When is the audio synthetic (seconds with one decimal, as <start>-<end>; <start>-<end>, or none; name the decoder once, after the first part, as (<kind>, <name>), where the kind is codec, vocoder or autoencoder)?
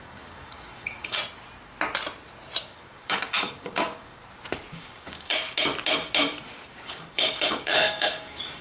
0.0-1.2 (codec, DAC); 2.6-4.2; 4.7-5.3; 6.7-8.6